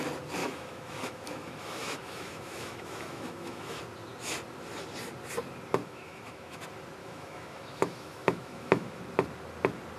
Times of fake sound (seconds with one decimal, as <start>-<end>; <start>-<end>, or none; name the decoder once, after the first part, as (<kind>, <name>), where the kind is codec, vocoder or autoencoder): 0.4-3.8 (autoencoder, DAC-VAE); 5.8-6.6; 7.0-9.0